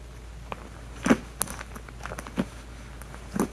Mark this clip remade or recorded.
recorded